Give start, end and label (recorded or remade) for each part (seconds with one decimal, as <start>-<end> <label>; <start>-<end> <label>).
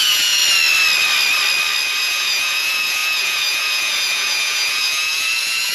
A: 0.0-0.4 remade; 0.4-2.0 recorded; 2.0-5.7 remade